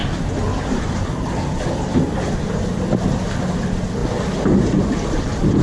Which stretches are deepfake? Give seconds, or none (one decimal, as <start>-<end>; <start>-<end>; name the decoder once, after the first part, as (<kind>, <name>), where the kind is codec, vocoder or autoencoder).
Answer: none